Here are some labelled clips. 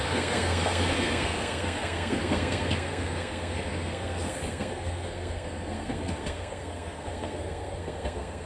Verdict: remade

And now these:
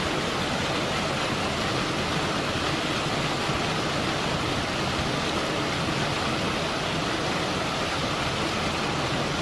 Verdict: recorded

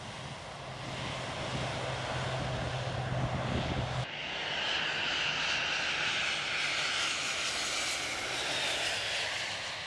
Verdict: recorded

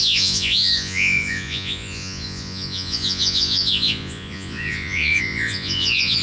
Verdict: remade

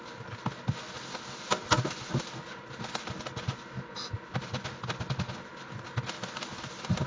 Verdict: recorded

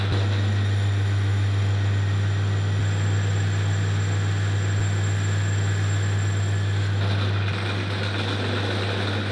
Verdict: recorded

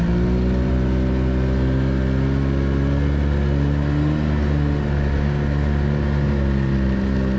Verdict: recorded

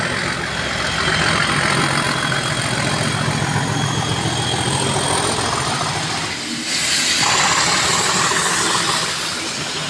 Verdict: recorded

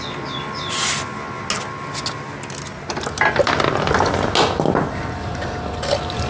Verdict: recorded